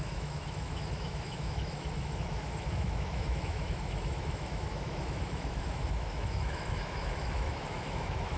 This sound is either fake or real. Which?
fake